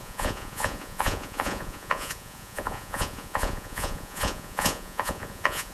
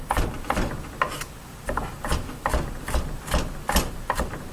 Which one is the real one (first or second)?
second